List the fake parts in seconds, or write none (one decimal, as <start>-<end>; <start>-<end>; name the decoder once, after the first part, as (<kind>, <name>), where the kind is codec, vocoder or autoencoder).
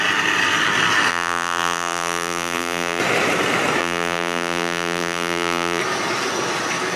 1.1-3.0 (vocoder, BigVGAN v2); 3.8-5.8